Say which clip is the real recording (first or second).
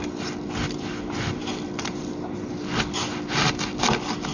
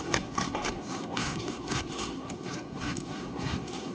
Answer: first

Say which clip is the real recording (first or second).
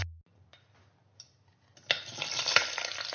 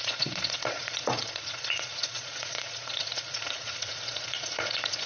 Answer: first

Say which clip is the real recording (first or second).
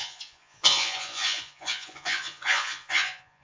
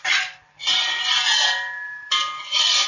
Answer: second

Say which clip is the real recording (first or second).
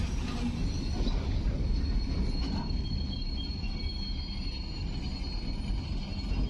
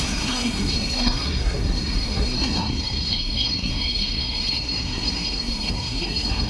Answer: first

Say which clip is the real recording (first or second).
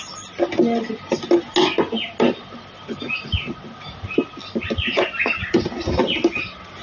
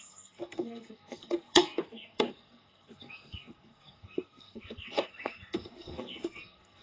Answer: first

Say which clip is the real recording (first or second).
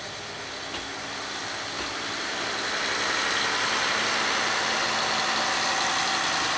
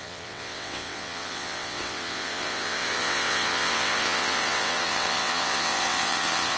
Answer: first